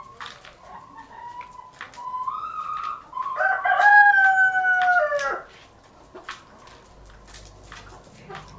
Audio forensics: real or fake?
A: real